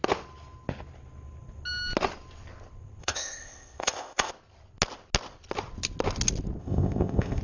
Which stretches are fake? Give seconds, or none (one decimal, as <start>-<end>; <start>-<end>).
3.0-4.3; 6.6-7.4